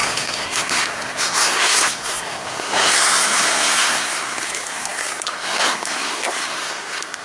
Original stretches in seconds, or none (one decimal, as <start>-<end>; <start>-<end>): none